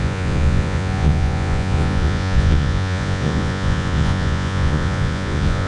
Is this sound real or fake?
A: fake